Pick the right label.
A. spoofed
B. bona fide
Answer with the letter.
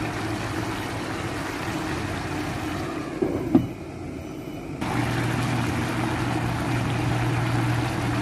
B